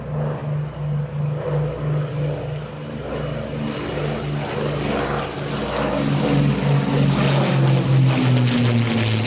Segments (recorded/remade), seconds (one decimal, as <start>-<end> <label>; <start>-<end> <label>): 0.0-9.3 recorded